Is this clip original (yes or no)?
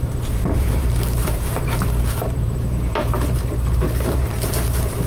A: no